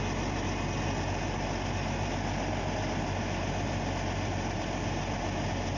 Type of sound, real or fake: real